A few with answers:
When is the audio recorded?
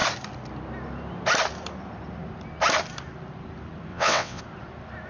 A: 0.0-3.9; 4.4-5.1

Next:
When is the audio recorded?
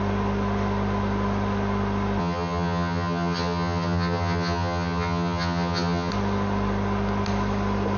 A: 0.0-2.2; 6.1-8.0